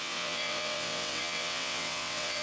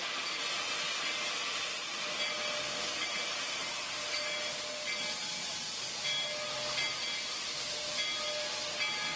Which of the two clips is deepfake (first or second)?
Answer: first